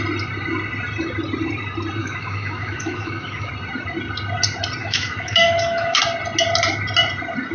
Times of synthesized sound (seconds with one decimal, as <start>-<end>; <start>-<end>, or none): 2.0-3.5; 4.8-6.0